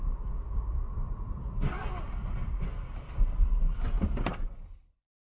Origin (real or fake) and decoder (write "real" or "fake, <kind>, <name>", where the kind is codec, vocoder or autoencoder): real